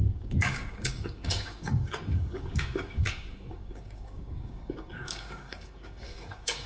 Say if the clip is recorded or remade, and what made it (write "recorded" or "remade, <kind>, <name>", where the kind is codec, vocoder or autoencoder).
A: remade, codec, DAC